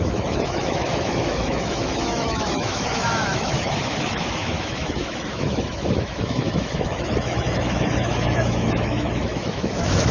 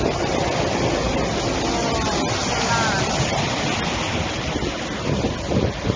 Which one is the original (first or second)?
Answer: second